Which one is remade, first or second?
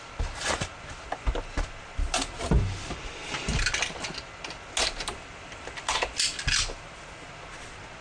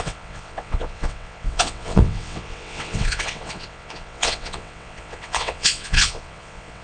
second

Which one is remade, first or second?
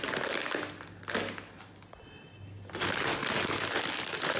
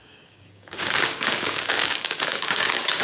second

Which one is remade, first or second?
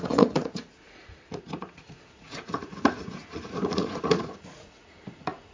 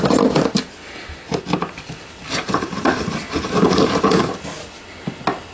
first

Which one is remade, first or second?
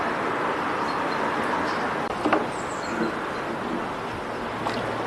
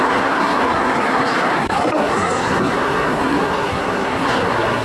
second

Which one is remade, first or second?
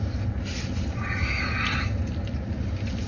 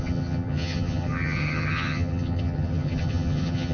second